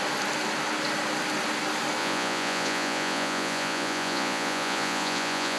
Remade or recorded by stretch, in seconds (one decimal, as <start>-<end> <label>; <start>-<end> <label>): 0.0-2.0 recorded; 2.0-5.6 remade